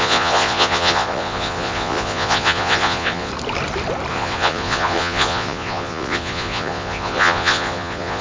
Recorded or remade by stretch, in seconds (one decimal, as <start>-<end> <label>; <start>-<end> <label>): 0.0-3.3 remade; 3.3-4.1 recorded; 4.1-8.2 remade